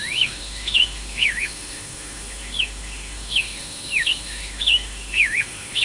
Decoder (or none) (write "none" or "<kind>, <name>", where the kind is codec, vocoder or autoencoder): autoencoder, DAC-VAE